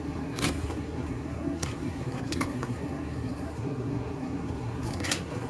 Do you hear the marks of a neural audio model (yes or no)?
yes